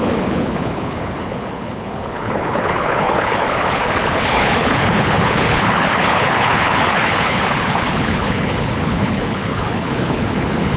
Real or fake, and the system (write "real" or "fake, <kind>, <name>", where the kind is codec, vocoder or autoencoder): fake, codec, HILCodec